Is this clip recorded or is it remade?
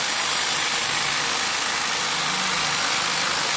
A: recorded